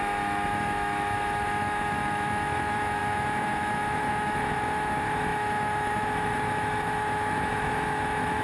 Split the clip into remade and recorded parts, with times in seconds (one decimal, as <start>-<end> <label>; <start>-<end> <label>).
0.0-8.4 remade